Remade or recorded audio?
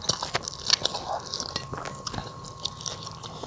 recorded